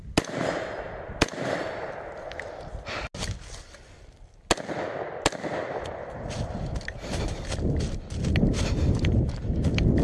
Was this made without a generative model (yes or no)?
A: yes